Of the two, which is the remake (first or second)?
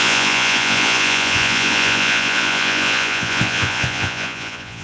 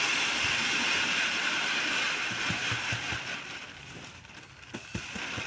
first